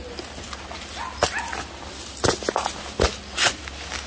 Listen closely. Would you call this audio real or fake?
real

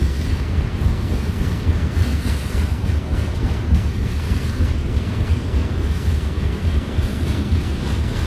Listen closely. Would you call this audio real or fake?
fake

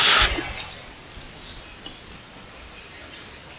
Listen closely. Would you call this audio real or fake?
real